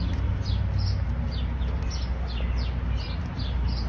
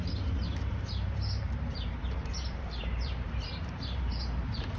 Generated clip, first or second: second